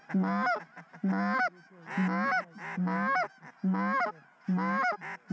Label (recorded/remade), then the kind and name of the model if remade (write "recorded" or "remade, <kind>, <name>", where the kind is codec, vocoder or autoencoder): recorded